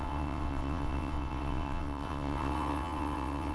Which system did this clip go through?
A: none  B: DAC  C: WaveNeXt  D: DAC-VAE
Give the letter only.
C